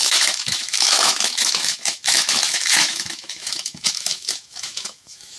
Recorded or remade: remade